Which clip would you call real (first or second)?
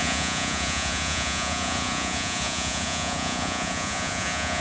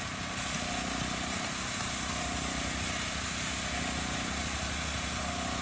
second